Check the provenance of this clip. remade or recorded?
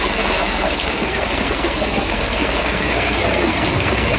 remade